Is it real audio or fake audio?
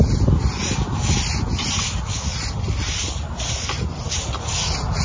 real